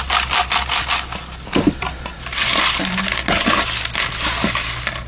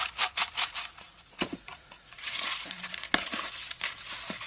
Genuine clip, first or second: first